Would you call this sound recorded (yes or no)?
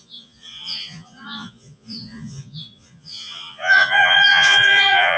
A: no